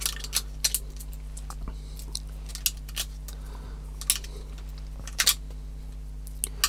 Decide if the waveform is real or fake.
real